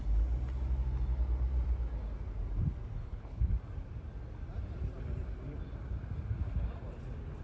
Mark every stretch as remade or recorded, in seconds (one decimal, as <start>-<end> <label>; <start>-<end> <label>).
0.0-3.0 recorded; 3.0-3.5 remade; 3.5-7.4 recorded